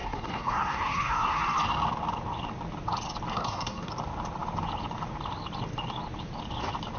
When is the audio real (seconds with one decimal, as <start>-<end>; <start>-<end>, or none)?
1.4-3.3; 3.9-7.0